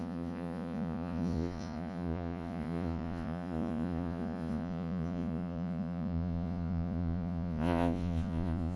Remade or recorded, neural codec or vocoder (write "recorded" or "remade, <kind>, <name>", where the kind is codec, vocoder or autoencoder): remade, vocoder, Vocos